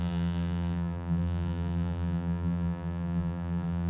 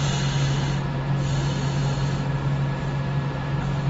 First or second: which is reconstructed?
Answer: first